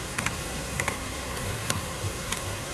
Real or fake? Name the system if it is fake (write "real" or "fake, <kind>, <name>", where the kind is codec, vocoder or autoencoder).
fake, codec, SNAC